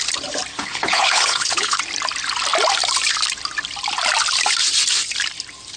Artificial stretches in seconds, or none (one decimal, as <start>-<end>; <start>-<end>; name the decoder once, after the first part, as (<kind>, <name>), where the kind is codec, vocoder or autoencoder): 0.5-1.8 (codec, HILCodec)